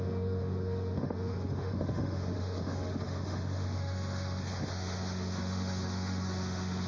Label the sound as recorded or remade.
remade